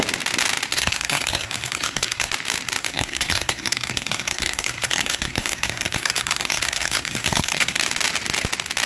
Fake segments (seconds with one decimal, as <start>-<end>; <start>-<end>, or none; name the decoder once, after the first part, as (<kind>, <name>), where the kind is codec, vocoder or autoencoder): 0.7-2.3 (codec, SNAC); 2.8-7.8